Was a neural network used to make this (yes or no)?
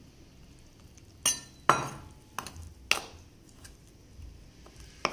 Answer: no